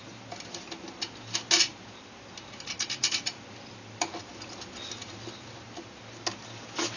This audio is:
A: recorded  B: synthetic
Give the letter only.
A